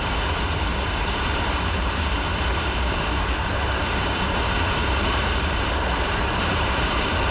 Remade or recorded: remade